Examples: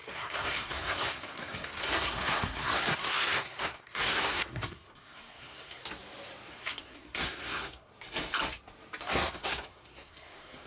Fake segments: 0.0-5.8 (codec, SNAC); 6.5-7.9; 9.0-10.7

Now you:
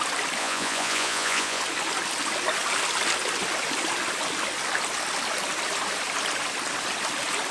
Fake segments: 0.4-1.6 (vocoder, Vocos)